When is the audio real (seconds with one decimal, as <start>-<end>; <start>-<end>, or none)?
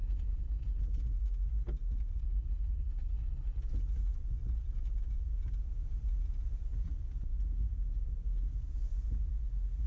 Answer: 0.8-2.2; 3.6-9.9